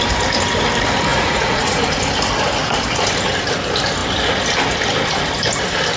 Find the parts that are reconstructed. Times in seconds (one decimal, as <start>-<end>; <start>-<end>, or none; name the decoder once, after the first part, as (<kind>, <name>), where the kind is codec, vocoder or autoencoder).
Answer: 1.1-2.1 (vocoder, Vocos)